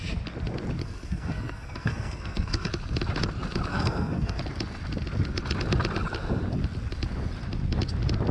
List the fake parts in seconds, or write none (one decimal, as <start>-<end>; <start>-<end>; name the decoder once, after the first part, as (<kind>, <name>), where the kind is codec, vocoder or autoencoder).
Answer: 0.8-2.7 (codec, SNAC); 3.7-4.4